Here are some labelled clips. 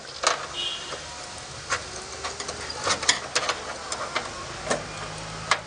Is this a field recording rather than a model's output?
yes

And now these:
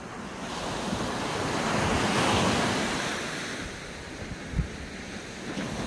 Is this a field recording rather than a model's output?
yes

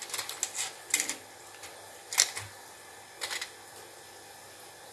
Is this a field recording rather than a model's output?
yes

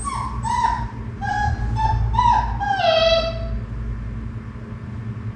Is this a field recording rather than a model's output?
yes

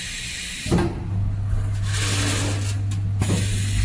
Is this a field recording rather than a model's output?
yes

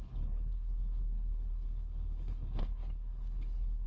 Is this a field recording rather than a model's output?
no